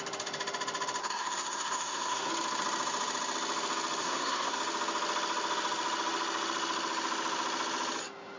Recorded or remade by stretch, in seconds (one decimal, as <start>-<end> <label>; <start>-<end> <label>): 0.0-1.0 recorded; 1.0-2.3 remade; 2.3-4.0 recorded; 4.0-4.6 remade; 4.6-8.4 recorded